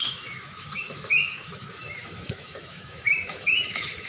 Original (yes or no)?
no